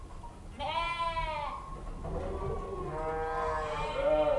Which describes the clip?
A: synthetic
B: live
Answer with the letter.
B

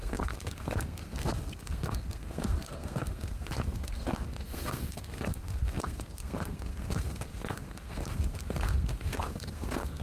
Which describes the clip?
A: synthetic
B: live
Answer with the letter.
A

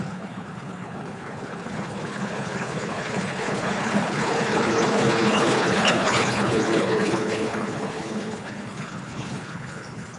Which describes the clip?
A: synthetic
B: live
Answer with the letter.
A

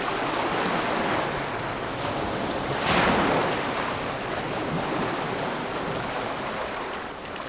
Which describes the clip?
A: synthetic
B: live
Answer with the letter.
B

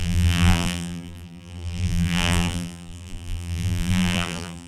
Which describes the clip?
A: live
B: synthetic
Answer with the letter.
B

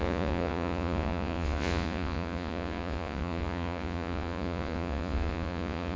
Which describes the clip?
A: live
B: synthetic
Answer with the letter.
B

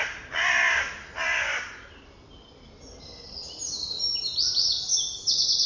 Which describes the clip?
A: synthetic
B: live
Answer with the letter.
B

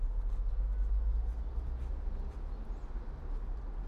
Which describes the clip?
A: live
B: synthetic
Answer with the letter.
A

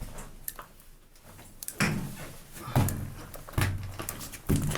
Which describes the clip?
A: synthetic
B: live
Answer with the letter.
B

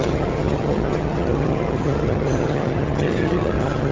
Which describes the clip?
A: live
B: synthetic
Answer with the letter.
B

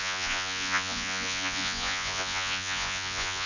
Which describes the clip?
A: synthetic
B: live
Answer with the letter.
A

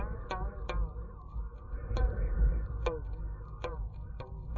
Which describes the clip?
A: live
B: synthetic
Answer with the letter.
A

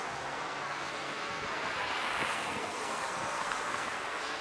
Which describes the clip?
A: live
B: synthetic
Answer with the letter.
B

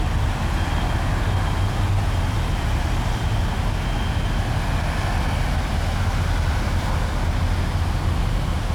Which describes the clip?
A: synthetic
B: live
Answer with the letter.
B